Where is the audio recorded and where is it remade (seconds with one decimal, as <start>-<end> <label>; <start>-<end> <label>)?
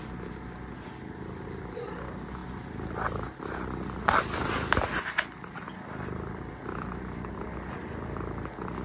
0.0-8.8 recorded